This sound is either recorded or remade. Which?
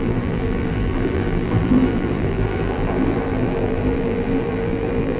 remade